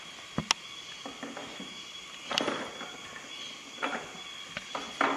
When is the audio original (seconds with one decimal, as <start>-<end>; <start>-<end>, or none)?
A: 0.0-1.4; 2.3-5.2